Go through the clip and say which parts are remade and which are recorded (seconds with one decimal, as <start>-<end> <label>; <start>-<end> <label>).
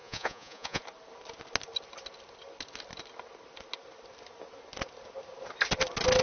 0.0-0.8 remade; 0.8-6.2 recorded